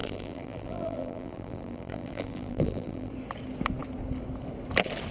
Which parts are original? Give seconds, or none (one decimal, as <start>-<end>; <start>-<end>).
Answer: 3.1-5.1